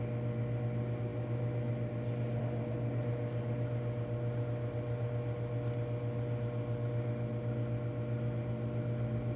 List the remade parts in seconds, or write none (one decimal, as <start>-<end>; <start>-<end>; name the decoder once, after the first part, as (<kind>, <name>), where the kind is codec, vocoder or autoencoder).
none